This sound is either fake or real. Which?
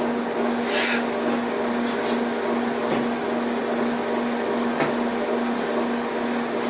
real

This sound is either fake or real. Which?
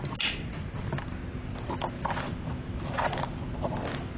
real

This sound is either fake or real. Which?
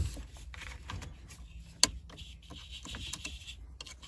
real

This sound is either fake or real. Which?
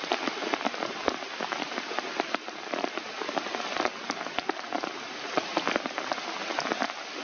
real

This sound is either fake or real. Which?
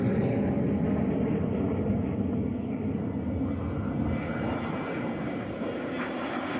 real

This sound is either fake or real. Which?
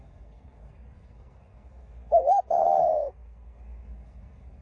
fake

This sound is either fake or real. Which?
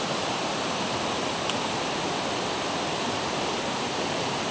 real